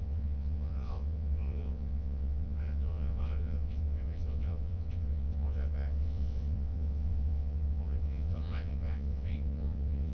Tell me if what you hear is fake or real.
fake